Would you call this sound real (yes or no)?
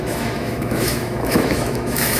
no